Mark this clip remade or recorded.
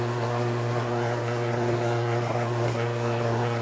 remade